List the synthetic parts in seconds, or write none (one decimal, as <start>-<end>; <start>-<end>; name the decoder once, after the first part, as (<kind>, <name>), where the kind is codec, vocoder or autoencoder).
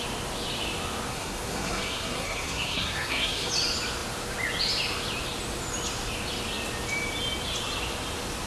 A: 1.1-3.5 (codec, SNAC)